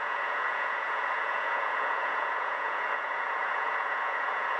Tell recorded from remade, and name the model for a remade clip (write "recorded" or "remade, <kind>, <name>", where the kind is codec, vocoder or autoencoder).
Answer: remade, vocoder, Vocos